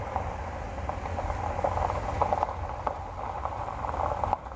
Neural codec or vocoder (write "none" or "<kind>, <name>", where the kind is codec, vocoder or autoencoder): none